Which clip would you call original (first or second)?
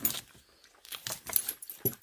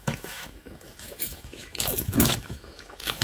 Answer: first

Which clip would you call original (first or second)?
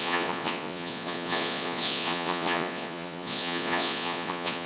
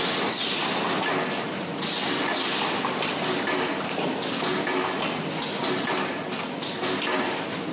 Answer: second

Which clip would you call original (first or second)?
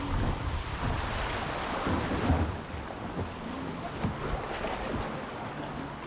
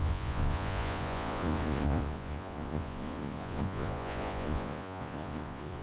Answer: first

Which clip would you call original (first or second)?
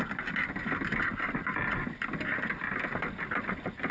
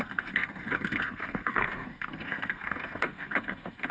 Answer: first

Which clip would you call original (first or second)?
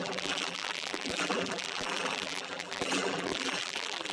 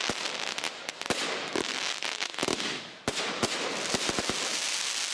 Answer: second